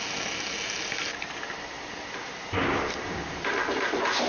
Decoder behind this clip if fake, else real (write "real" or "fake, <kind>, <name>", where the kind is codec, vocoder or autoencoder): real